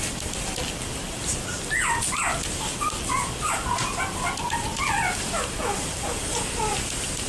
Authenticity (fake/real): real